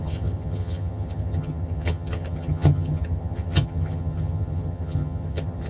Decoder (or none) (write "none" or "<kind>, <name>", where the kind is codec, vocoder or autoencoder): vocoder, HiFi-GAN